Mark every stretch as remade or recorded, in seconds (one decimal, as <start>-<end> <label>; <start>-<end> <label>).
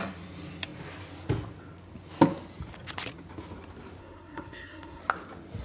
0.0-4.0 recorded; 4.0-5.0 remade; 5.0-5.6 recorded